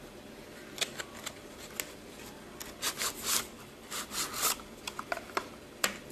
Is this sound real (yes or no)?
yes